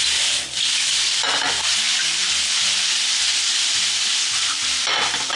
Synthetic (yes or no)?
no